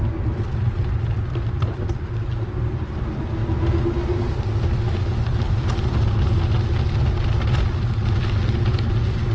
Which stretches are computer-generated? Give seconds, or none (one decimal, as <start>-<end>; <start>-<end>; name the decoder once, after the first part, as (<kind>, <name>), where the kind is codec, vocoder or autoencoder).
none